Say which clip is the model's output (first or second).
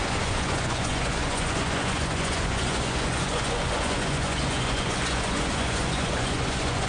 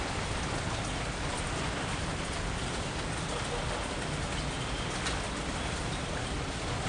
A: first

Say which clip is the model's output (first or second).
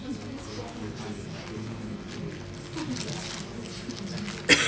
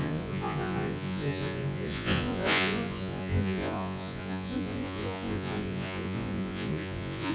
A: second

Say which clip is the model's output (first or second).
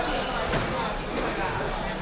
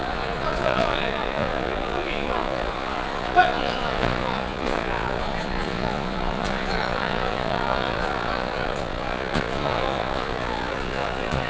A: second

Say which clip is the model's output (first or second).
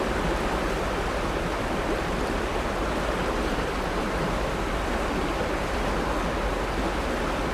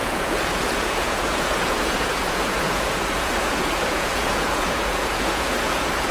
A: second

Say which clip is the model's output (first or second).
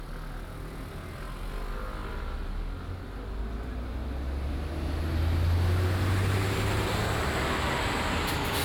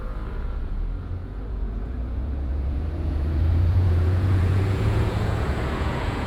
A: second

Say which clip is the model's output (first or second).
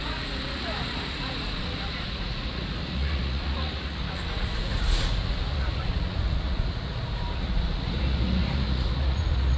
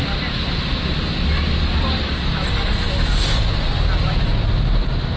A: first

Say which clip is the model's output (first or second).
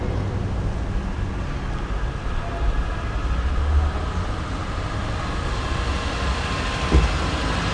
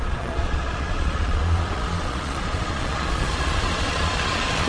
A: second